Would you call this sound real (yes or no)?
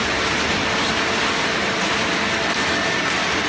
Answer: yes